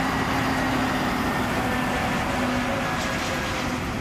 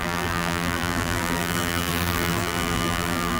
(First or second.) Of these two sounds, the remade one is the second